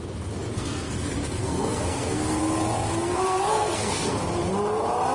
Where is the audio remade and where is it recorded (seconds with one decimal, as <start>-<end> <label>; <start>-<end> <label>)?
0.0-0.5 recorded; 0.5-2.4 remade; 2.4-3.0 recorded; 3.0-4.2 remade; 4.2-5.1 recorded